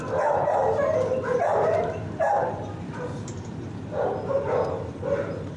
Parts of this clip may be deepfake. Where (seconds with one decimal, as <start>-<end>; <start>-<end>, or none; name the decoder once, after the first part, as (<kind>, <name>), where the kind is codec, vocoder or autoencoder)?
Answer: 1.5-4.9 (vocoder, BigVGAN v2)